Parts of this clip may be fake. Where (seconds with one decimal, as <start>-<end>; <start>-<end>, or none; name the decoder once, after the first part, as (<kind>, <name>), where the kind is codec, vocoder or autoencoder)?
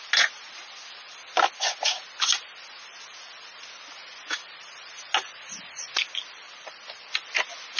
none